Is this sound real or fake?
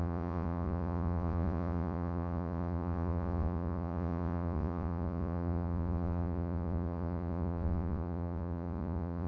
fake